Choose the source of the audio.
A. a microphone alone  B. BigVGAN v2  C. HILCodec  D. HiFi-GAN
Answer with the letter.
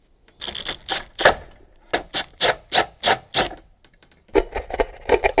A